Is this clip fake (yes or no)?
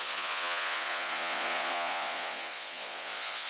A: yes